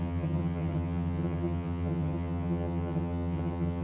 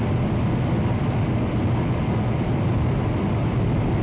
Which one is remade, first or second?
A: first